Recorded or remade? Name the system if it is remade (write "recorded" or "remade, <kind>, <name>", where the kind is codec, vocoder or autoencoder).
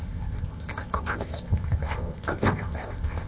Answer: remade, codec, ZipCodec